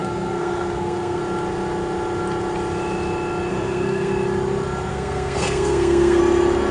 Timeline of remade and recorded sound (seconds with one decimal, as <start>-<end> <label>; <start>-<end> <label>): 0.0-1.2 remade; 1.2-3.5 recorded; 3.5-4.1 remade; 4.1-4.9 recorded; 4.9-6.2 remade; 6.2-6.7 recorded